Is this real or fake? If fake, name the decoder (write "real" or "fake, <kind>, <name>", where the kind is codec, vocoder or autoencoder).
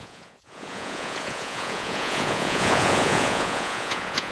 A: fake, vocoder, Vocos